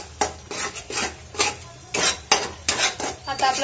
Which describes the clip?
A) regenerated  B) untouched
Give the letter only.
B